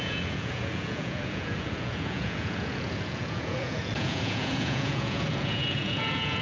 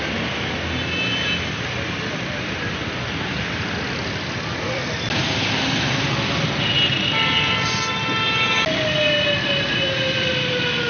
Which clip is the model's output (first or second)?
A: first